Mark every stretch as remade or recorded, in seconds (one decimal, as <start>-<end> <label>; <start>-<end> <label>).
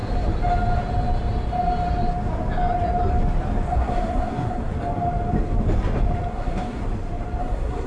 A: 0.0-3.7 recorded; 3.7-4.7 remade; 4.7-6.3 recorded; 6.3-6.8 remade; 6.8-7.4 recorded; 7.4-7.9 remade